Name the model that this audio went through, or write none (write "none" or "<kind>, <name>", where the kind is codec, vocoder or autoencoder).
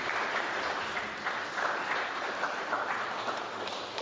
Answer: vocoder, BigVGAN v2